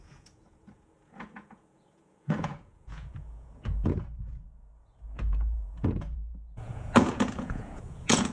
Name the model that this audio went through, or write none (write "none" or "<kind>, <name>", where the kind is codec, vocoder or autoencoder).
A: vocoder, Vocos